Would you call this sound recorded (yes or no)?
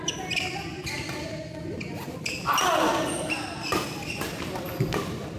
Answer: yes